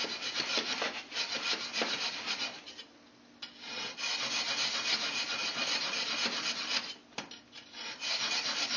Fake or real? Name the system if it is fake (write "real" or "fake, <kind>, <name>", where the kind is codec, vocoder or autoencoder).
real